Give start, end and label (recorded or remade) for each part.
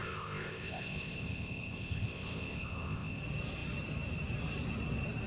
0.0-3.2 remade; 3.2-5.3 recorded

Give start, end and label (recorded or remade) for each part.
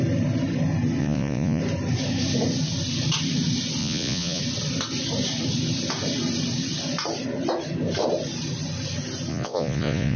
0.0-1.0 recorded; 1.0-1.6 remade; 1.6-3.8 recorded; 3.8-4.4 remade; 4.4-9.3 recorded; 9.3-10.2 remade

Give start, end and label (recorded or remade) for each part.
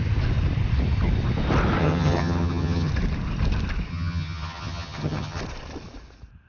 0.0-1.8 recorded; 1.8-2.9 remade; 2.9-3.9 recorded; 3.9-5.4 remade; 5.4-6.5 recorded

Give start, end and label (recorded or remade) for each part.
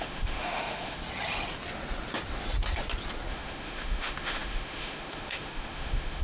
0.0-1.0 remade; 1.0-3.3 recorded; 3.3-6.2 remade